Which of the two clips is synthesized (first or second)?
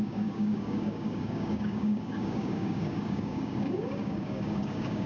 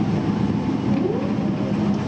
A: first